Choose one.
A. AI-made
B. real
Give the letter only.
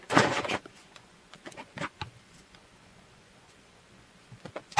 A